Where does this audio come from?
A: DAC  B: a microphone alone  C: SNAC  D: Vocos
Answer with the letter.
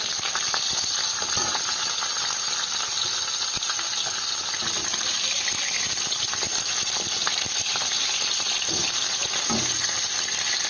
B